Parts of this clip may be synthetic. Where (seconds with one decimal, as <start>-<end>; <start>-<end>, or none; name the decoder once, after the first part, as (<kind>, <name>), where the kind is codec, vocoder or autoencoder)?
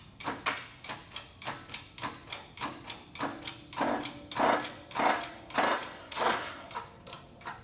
6.0-6.7 (codec, SNAC)